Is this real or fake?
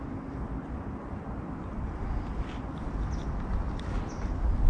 real